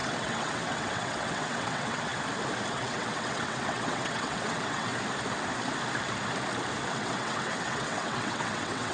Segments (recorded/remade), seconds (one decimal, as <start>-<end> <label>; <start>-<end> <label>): 0.0-2.1 remade; 2.1-2.7 recorded; 2.7-4.9 remade; 4.9-6.9 recorded; 6.9-8.9 remade